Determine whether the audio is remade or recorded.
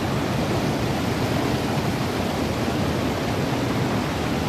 recorded